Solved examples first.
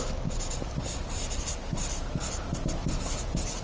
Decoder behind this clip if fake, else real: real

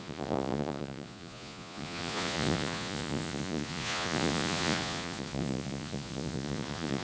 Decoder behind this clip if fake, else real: fake, vocoder, Vocos